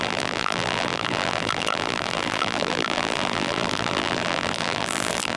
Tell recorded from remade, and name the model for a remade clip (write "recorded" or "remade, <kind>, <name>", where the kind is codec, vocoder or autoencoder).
remade, vocoder, BigVGAN v2